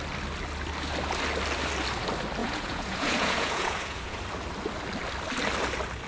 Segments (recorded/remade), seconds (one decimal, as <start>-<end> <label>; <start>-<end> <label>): 0.0-2.4 recorded; 2.4-4.2 remade; 4.2-6.1 recorded